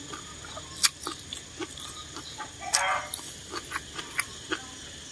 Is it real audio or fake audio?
real